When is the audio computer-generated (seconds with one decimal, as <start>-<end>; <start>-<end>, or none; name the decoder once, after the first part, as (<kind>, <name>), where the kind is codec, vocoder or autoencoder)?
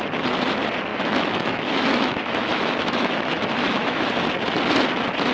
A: 0.9-4.1 (autoencoder, DAC-VAE)